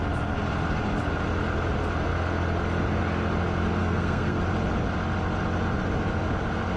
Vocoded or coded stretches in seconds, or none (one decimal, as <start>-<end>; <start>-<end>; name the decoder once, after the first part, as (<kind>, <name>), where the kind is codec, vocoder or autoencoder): 3.8-4.4 (codec, SNAC)